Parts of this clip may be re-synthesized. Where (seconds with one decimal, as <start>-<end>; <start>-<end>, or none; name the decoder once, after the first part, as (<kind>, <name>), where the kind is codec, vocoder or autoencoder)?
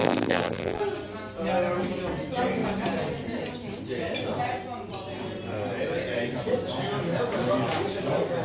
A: 0.0-0.8 (vocoder, BigVGAN v2)